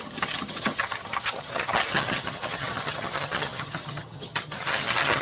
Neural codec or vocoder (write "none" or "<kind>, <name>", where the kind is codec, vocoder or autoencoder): vocoder, HiFi-GAN